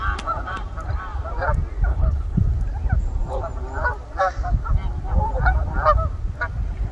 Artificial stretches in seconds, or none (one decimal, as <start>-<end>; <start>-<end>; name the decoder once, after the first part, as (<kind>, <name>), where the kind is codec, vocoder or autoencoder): 1.9-2.4 (codec, HILCodec)